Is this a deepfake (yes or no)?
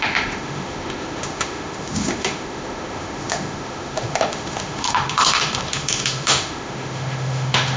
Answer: yes